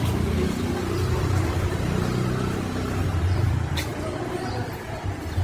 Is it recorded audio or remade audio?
recorded